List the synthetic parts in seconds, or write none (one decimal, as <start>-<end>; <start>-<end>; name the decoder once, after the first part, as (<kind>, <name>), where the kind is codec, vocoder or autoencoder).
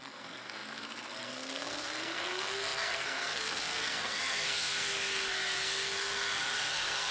0.0-7.1 (codec, SNAC)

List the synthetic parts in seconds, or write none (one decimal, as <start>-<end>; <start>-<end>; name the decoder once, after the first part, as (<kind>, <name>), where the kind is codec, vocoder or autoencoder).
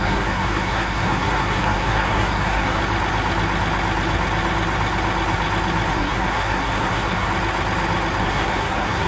0.0-2.8 (codec, SNAC); 5.9-7.3; 8.2-9.1